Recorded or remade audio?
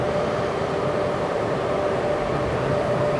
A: recorded